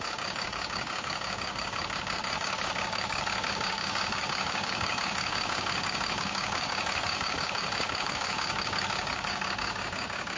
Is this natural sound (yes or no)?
no